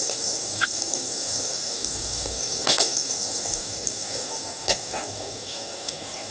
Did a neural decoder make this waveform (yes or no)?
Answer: yes